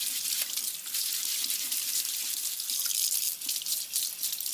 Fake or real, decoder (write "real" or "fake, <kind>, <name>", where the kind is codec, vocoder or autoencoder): real